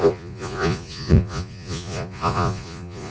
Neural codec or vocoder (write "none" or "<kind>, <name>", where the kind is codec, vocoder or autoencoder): vocoder, Vocos